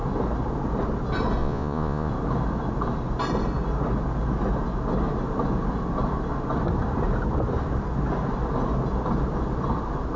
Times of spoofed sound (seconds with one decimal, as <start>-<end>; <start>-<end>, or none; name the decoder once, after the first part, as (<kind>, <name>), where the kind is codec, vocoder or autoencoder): 1.4-2.1 (vocoder, Vocos)